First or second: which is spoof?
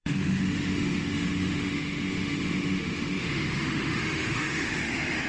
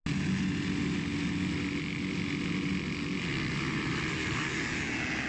first